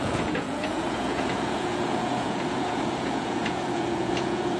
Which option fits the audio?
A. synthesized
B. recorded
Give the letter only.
A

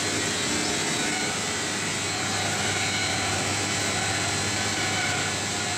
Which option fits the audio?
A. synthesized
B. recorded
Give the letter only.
B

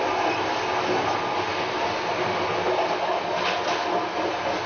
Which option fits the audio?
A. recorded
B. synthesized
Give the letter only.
A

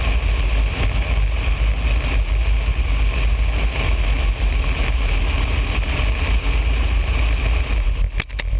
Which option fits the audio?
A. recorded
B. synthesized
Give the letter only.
A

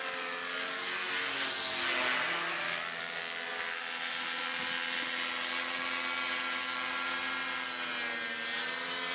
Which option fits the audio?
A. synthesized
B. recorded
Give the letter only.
B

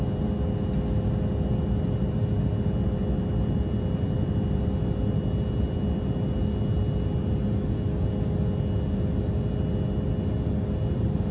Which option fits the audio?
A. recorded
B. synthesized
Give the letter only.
A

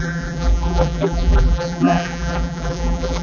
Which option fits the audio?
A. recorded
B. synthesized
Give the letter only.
B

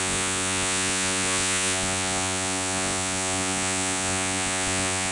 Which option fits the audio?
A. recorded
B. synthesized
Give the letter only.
B